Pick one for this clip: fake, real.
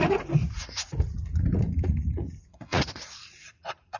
fake